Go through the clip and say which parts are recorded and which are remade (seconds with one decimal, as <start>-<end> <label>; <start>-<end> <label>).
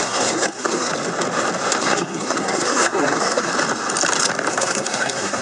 0.0-0.9 remade; 0.9-1.8 recorded; 1.8-3.5 remade; 3.5-4.5 recorded; 4.5-5.4 remade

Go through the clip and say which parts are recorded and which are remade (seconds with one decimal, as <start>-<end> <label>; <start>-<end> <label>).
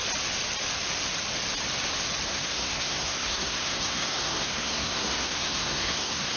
0.0-2.3 recorded; 2.3-6.4 remade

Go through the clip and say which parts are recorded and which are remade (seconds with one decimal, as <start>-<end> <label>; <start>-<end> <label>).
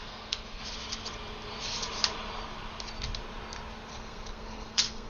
0.0-0.6 remade; 0.6-3.9 recorded; 3.9-5.1 remade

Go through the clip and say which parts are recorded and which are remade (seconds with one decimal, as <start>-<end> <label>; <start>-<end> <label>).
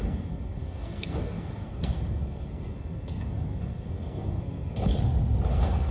0.0-4.9 remade; 4.9-5.5 recorded; 5.5-5.9 remade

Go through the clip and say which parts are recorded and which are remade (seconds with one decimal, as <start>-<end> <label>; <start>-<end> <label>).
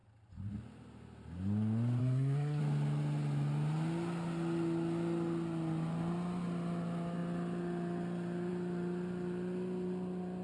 0.0-2.0 recorded; 2.0-2.6 remade; 2.6-10.4 recorded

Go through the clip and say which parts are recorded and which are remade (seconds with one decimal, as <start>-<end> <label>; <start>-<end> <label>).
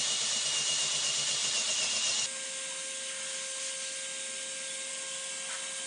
0.0-5.9 recorded